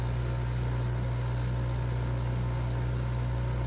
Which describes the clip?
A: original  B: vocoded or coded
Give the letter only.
A